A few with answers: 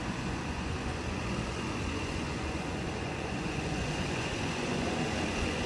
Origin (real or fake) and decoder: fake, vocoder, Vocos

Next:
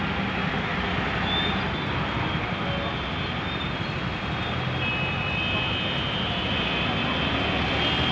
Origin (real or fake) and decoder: real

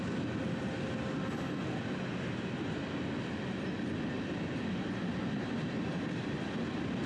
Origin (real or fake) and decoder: real